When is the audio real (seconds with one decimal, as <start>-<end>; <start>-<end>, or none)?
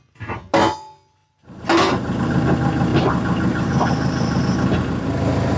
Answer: 0.0-2.9; 4.4-5.6